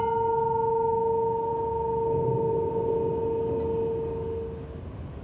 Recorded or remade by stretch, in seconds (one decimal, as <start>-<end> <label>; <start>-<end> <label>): 0.0-5.2 recorded